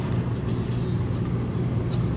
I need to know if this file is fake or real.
real